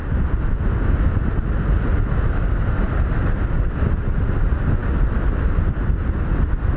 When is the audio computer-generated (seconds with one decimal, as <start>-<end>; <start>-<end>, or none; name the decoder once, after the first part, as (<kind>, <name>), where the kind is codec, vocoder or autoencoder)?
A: none